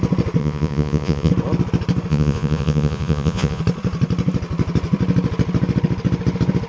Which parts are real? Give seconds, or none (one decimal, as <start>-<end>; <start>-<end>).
0.0-0.4; 1.3-2.1; 3.6-6.7